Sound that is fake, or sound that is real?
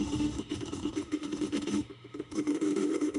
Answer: fake